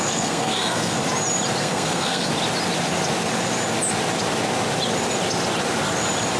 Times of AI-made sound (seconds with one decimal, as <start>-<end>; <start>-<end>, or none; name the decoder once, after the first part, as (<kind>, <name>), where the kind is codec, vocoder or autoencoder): 0.0-1.0 (codec, SNAC); 1.6-2.3